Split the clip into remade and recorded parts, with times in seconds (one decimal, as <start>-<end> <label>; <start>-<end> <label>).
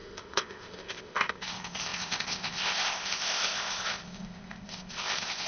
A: 0.0-5.5 remade